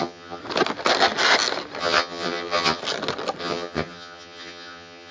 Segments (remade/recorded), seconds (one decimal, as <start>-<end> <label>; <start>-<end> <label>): 0.0-0.4 remade; 0.4-1.8 recorded; 1.8-2.8 remade; 2.8-3.4 recorded; 3.4-5.1 remade